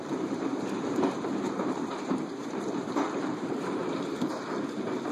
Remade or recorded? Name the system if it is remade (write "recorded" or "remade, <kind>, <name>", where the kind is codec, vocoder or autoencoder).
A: remade, vocoder, BigVGAN v2